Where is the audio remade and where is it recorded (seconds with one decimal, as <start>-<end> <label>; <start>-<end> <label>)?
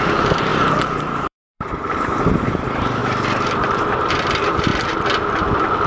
0.0-4.7 remade; 4.7-5.9 recorded